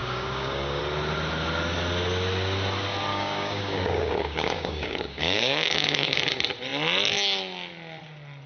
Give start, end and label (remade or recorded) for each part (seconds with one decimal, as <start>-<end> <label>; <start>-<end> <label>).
0.0-0.8 remade; 0.8-3.1 recorded; 3.1-6.2 remade; 6.2-8.5 recorded